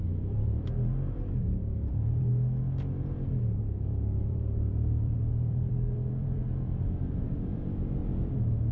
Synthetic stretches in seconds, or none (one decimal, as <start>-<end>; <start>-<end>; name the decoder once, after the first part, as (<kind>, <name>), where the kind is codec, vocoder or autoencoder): 0.0-2.3 (vocoder, BigVGAN v2); 3.6-8.0